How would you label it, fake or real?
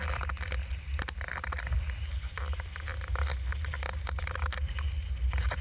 real